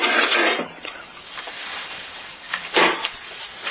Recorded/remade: remade